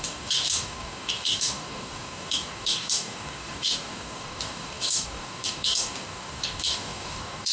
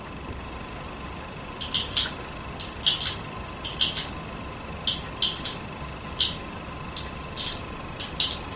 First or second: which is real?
second